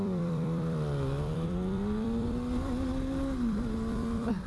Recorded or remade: remade